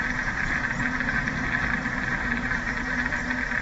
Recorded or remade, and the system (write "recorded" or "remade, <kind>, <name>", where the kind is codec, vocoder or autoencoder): remade, vocoder, BigVGAN v2